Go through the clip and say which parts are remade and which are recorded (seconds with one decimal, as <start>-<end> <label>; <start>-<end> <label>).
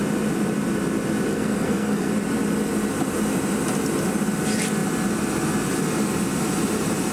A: 0.0-1.3 recorded; 1.3-2.1 remade; 2.1-7.1 recorded